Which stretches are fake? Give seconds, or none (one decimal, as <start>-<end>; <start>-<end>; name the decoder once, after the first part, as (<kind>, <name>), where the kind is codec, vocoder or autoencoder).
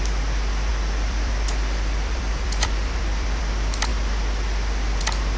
0.7-3.4 (vocoder, BigVGAN v2)